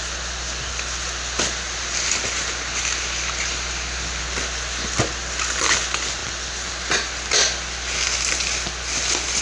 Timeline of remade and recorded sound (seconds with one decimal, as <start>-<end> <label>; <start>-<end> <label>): 0.0-6.2 recorded; 6.2-6.8 remade; 6.8-9.4 recorded

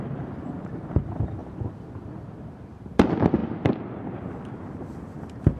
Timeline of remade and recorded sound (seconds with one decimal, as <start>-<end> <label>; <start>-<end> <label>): 0.0-3.4 remade; 3.4-4.8 recorded; 4.8-5.6 remade

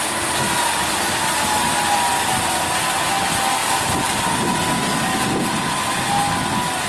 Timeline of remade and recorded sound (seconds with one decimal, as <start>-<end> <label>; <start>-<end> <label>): 0.0-3.6 recorded; 3.6-4.3 remade; 4.3-6.9 recorded

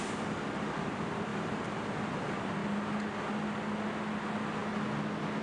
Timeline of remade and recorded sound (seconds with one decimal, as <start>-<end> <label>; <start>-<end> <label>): 0.0-1.3 recorded; 1.3-2.0 remade; 2.0-5.4 recorded

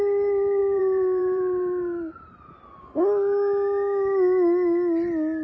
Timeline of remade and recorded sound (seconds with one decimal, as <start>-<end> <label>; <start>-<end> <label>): 0.0-0.6 recorded; 0.6-2.4 remade; 2.4-5.4 recorded

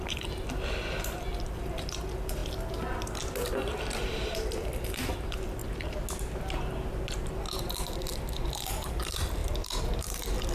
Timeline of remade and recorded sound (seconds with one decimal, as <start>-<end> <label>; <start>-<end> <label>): 0.0-2.4 remade; 2.4-3.5 recorded; 3.5-5.6 remade; 5.6-7.9 recorded; 7.9-10.5 remade

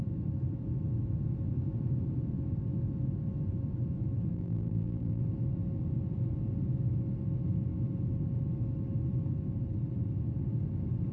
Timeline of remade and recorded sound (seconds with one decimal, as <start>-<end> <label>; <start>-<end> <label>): 0.0-4.3 recorded; 4.3-5.2 remade; 5.2-11.1 recorded